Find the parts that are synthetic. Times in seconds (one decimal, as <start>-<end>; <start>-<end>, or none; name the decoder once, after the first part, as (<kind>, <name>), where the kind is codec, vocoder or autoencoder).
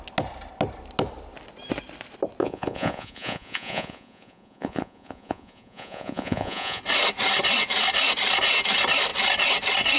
2.4-6.8 (vocoder, Vocos)